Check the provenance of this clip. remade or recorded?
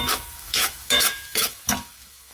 remade